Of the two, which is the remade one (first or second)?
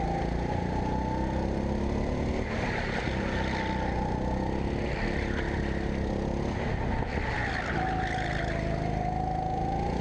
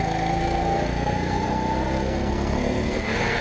second